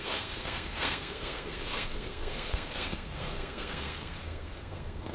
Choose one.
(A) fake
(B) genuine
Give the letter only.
A